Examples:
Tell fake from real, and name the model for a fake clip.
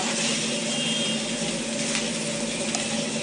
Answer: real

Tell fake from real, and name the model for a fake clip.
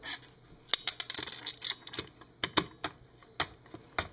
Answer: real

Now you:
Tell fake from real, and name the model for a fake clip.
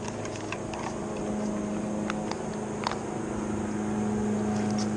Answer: real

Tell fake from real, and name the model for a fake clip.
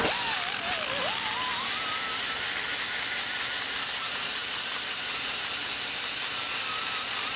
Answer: real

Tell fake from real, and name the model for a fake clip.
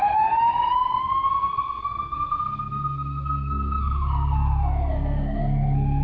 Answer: fake, codec, SNAC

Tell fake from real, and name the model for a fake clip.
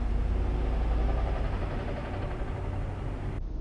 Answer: real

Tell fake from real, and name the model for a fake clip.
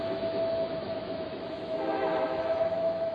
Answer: fake, autoencoder, DAC-VAE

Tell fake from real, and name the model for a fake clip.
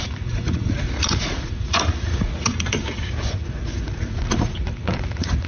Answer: fake, vocoder, Vocos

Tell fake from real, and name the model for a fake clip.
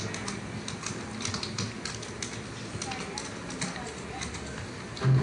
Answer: real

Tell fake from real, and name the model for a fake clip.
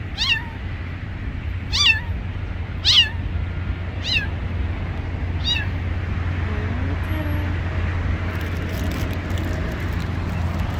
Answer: real